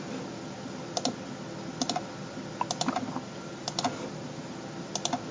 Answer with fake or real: real